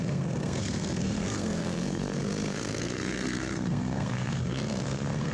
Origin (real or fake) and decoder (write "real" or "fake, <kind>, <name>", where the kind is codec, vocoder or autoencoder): fake, codec, SNAC